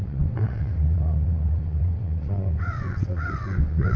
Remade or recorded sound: remade